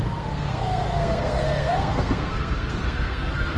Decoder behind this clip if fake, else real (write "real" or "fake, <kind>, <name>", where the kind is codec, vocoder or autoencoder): fake, codec, SNAC